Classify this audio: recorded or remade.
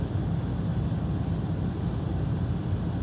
recorded